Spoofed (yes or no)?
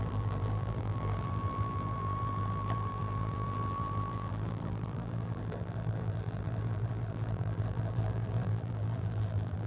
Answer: yes